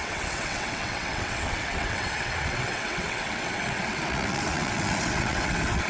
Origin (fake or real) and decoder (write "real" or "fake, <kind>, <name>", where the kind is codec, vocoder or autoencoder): fake, vocoder, WaveNeXt